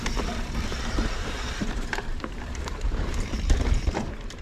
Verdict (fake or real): fake